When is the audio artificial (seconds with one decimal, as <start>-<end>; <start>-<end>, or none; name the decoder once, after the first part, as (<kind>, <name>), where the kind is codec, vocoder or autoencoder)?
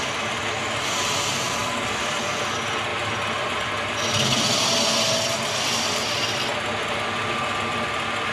none